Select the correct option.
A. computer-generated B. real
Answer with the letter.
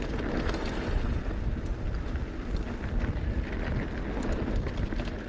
B